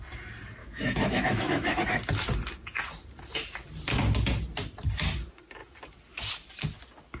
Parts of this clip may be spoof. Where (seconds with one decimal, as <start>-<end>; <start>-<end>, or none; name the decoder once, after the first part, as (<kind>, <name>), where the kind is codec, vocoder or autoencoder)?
0.6-1.8 (autoencoder, DAC-VAE)